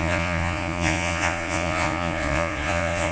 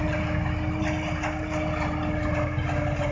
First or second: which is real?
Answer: second